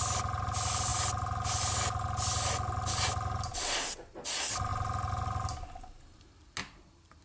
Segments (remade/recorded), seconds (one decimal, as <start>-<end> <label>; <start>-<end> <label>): 0.0-7.2 recorded